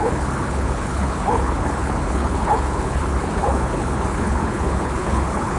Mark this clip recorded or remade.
remade